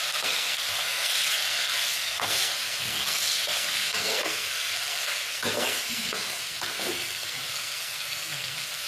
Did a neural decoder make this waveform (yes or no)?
yes